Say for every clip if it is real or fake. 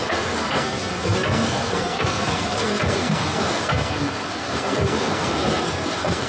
fake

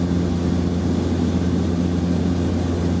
real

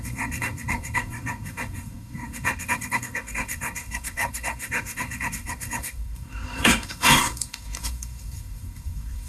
fake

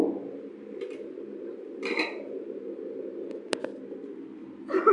real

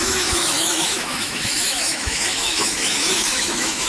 fake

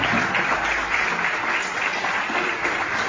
real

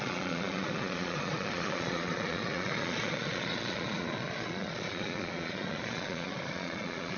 fake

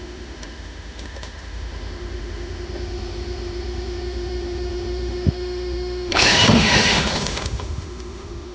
fake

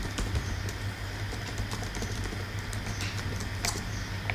real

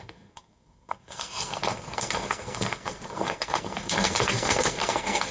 fake